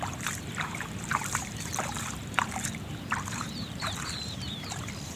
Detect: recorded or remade remade